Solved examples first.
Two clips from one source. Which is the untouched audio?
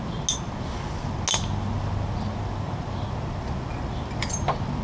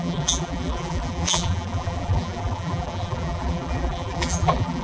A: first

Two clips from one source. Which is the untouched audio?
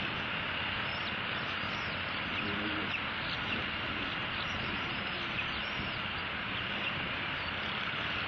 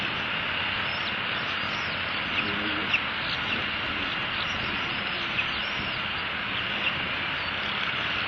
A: second